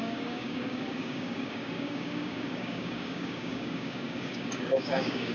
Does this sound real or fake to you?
fake